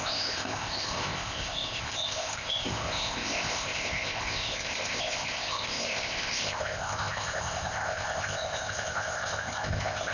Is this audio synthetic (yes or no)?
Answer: yes